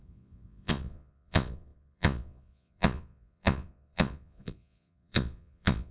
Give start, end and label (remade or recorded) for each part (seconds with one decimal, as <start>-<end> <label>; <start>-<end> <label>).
0.0-5.9 remade